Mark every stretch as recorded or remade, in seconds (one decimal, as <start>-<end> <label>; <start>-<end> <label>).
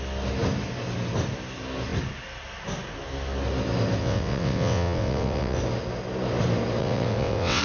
0.0-4.0 recorded; 4.0-5.6 remade; 5.6-6.8 recorded; 6.8-7.6 remade